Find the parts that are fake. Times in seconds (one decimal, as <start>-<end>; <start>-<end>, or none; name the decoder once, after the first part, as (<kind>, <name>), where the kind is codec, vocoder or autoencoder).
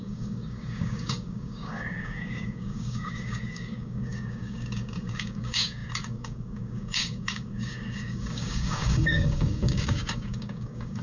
0.0-11.0 (codec, DAC)